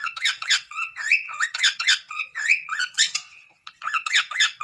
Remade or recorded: remade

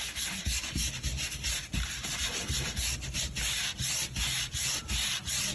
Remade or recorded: recorded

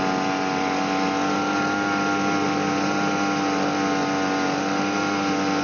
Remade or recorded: recorded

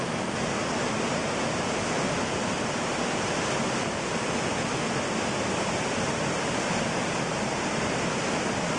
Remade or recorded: recorded